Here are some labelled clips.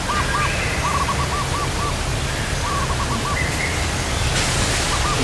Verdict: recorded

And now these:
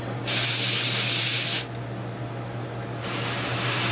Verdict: recorded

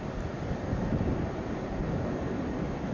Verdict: recorded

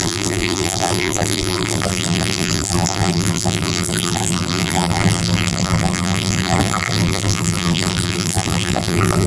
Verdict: remade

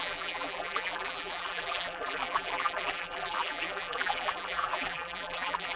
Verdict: remade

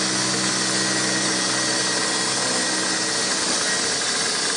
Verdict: recorded